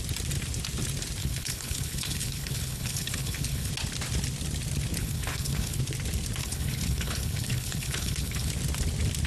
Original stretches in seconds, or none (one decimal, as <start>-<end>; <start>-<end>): 0.0-1.2; 3.7-5.0; 5.8-6.4; 8.5-9.3